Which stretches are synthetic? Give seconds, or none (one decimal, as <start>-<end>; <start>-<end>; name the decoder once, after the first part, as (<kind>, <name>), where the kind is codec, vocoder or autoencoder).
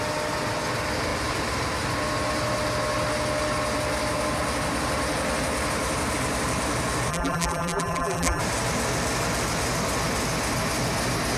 7.1-8.4 (vocoder, BigVGAN v2)